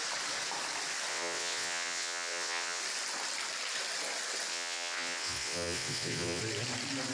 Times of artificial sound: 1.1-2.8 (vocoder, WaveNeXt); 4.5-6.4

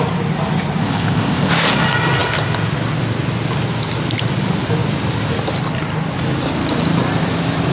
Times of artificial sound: 0.8-1.5 (codec, ZipCodec)